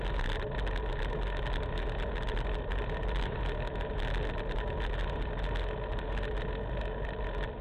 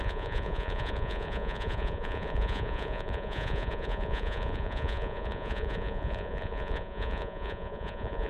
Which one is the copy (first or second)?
second